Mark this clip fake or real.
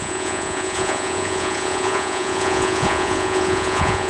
fake